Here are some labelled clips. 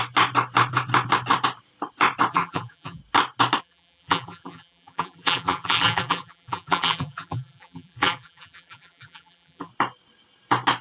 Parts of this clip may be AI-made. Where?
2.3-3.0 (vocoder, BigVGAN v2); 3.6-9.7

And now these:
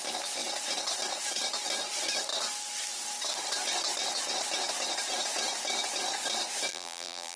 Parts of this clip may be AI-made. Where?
6.7-7.4 (vocoder, BigVGAN v2)

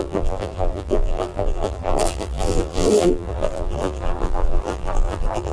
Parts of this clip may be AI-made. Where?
0.0-5.5 (vocoder, BigVGAN v2)